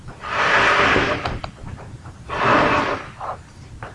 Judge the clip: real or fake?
fake